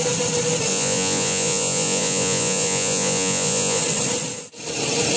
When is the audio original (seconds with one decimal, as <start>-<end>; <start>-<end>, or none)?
0.0-0.7; 3.8-5.2